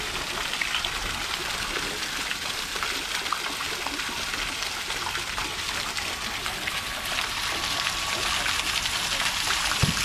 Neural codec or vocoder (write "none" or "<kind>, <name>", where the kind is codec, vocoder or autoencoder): none